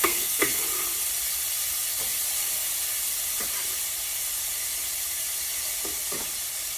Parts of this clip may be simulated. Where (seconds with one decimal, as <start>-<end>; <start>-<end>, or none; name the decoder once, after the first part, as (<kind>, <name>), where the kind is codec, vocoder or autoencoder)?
0.0-0.6 (codec, SNAC)